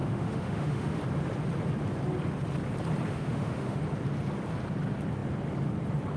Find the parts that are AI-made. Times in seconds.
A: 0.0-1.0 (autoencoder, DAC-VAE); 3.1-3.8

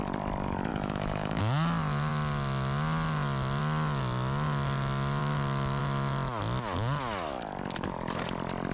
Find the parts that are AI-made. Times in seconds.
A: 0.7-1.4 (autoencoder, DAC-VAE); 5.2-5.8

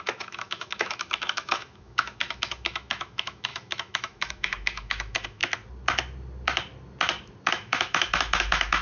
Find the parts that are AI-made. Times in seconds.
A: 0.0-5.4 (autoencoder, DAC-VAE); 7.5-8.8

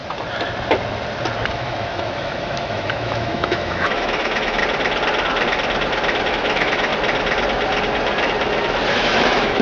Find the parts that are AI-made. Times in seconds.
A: 1.5-4.6 (autoencoder, DAC-VAE); 6.3-6.9; 8.9-9.6

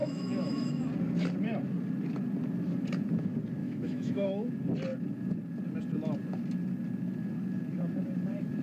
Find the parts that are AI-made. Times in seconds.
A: 0.0-0.9 (autoencoder, DAC-VAE); 3.6-4.5

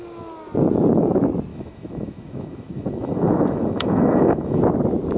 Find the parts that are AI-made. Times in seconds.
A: 1.5-4.6 (autoencoder, DAC-VAE)

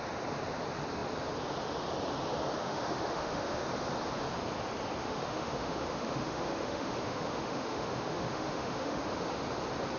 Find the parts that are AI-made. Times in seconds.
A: 2.6-3.6 (autoencoder, DAC-VAE); 5.0-9.0